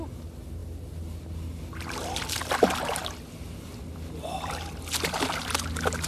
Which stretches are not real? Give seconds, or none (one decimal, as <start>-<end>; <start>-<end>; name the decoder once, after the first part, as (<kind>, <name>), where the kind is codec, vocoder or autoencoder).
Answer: none